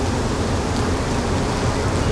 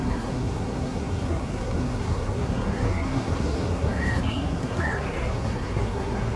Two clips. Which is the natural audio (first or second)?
first